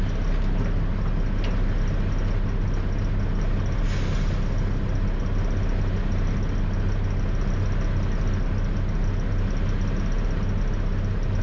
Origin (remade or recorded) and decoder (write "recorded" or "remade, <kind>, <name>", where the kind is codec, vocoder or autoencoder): recorded